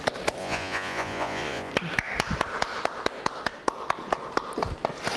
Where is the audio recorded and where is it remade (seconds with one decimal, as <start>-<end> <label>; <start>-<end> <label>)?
0.0-0.4 recorded; 0.4-1.7 remade; 1.7-5.2 recorded